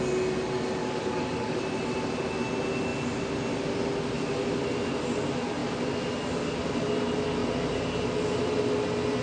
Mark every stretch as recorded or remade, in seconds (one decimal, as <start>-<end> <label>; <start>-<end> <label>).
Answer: 0.0-0.8 recorded; 0.8-1.6 remade; 1.6-9.2 recorded